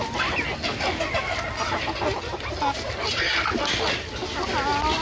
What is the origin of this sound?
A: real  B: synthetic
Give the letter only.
A